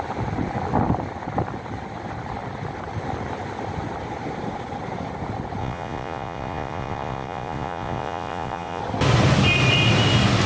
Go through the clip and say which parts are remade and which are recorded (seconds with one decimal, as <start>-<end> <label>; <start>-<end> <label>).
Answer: 0.0-5.6 recorded; 5.6-8.8 remade; 8.8-10.5 recorded